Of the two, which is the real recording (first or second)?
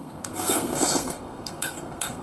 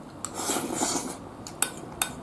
second